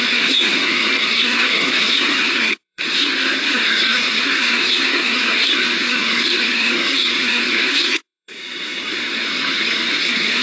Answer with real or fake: fake